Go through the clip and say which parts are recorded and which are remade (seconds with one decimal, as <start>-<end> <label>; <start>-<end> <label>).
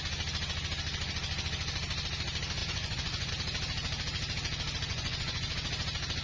0.0-2.6 recorded; 2.6-3.3 remade; 3.3-4.9 recorded; 4.9-5.5 remade; 5.5-6.2 recorded